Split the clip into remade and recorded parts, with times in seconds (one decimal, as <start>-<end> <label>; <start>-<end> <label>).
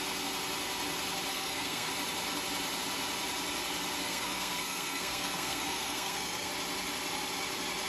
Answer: 0.0-1.3 recorded; 1.3-1.9 remade; 1.9-4.0 recorded; 4.0-6.5 remade; 6.5-7.9 recorded